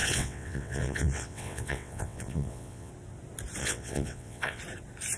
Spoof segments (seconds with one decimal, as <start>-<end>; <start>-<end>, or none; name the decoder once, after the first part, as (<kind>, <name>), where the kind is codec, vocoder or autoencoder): 0.0-2.9 (vocoder, WaveNeXt); 3.6-4.6